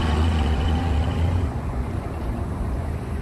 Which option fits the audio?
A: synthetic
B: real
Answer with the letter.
A